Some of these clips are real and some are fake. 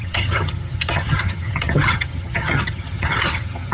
fake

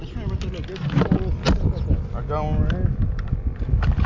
real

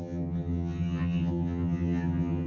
fake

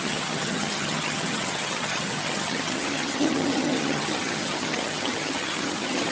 fake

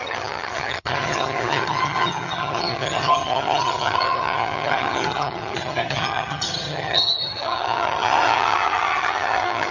fake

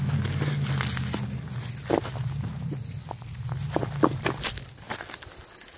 real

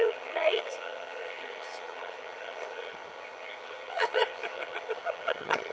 fake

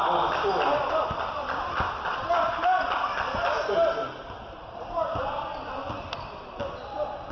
real